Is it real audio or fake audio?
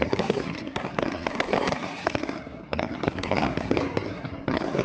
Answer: fake